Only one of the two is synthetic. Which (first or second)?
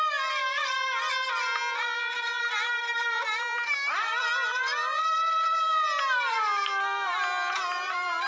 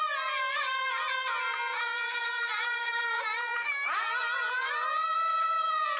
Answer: second